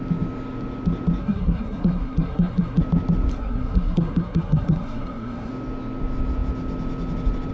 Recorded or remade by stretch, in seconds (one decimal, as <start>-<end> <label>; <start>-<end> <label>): 0.0-1.2 recorded; 1.2-2.8 remade; 2.8-3.3 recorded; 3.3-5.5 remade; 5.5-7.5 recorded